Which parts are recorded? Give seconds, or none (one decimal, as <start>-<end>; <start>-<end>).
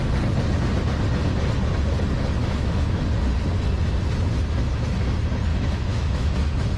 0.0-2.4; 3.0-5.5; 6.3-6.8